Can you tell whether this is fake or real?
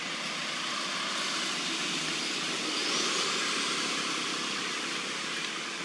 real